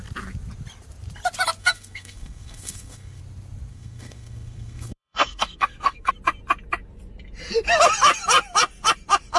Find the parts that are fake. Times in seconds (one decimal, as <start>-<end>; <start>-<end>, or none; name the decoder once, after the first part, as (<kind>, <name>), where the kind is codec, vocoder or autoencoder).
1.6-3.2 (codec, SNAC); 3.7-6.1